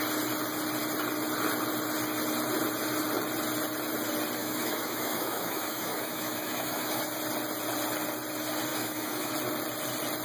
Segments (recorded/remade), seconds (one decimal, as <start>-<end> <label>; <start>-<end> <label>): 0.0-4.4 recorded; 4.4-7.0 remade; 7.0-8.7 recorded; 8.7-9.3 remade; 9.3-10.2 recorded